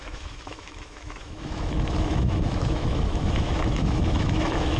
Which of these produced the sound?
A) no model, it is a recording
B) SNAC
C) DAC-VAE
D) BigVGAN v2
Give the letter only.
C